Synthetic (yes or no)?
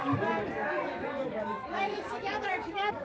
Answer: yes